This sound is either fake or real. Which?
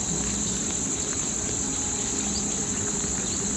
real